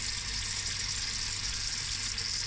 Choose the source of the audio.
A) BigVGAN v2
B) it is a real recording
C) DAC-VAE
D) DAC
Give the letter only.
B